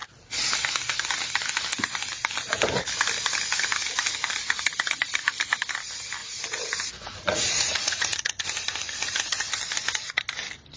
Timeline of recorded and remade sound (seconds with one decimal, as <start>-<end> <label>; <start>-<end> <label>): 0.0-6.2 recorded; 6.2-8.4 remade; 8.4-10.8 recorded